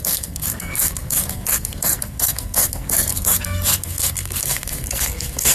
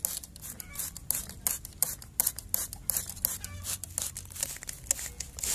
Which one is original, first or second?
second